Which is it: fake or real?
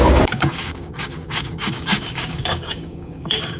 fake